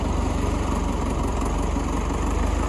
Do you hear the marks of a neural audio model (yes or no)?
no